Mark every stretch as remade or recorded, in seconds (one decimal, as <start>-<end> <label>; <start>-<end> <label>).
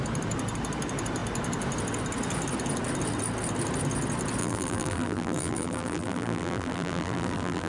0.0-4.4 recorded; 4.4-7.7 remade